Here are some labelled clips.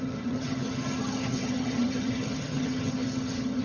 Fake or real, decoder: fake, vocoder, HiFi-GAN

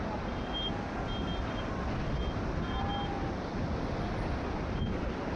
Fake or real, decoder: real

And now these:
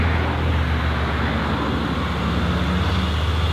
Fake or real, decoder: real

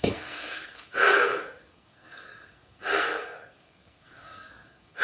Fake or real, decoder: fake, codec, SNAC